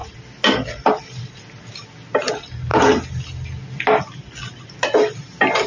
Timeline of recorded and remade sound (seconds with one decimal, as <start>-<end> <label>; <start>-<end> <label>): 0.0-5.7 recorded